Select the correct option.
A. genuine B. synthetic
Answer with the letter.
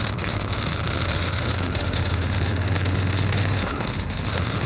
B